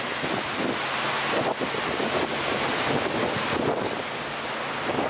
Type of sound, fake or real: real